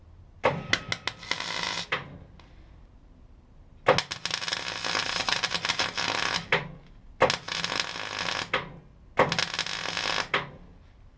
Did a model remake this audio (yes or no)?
no